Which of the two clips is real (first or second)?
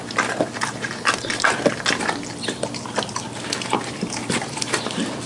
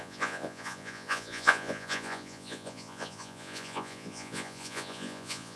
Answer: first